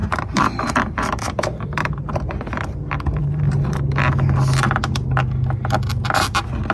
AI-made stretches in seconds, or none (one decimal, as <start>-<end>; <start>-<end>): 0.0-3.8